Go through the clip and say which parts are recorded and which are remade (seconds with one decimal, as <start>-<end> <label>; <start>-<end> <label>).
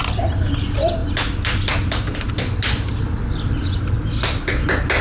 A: 0.0-5.0 recorded